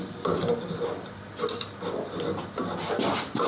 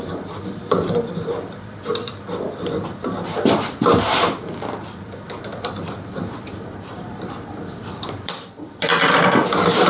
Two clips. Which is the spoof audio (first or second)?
second